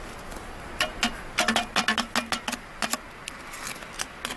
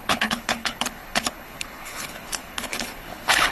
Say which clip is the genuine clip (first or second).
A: first